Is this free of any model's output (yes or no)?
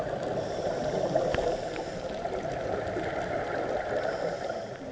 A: yes